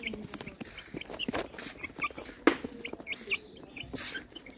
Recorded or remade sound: recorded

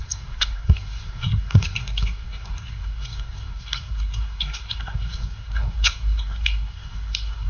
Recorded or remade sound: remade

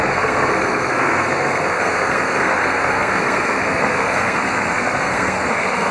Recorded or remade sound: remade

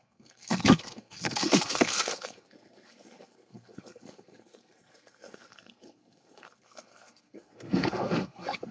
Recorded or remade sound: remade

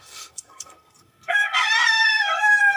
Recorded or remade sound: remade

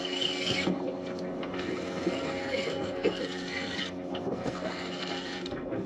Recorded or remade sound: remade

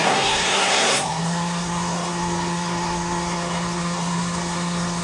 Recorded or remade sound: remade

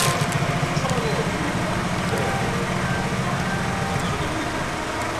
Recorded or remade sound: recorded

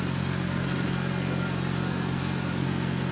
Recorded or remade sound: remade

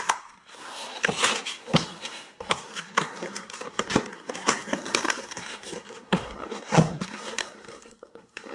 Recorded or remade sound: remade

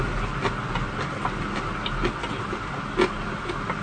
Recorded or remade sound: recorded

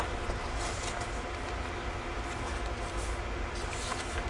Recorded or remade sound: recorded